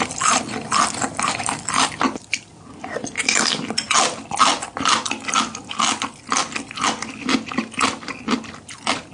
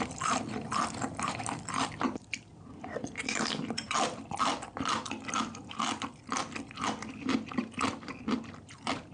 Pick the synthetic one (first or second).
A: second